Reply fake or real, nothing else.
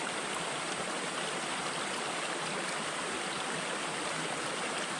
real